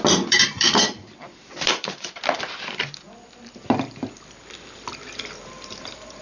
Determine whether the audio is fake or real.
fake